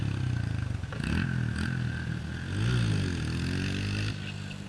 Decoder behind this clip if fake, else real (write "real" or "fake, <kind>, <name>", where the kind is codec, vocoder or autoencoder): real